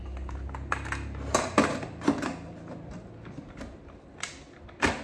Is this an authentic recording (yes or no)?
yes